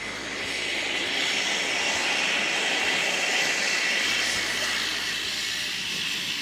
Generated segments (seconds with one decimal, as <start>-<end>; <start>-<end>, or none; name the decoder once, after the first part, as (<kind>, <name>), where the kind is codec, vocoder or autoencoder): 0.0-6.4 (vocoder, BigVGAN v2)